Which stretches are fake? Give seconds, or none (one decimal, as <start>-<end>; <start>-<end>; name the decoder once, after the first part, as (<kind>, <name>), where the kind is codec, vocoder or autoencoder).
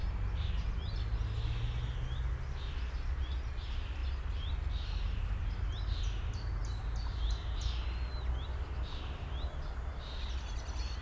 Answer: none